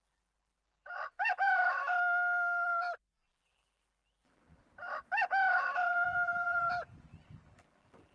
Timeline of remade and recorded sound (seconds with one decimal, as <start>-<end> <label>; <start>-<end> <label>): 0.0-1.6 remade; 1.6-3.1 recorded; 3.1-4.6 remade; 4.6-5.5 recorded; 5.5-8.1 remade